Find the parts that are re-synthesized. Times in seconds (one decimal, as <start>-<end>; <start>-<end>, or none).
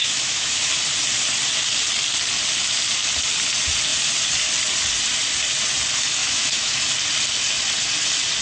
0.0-0.7; 6.2-6.8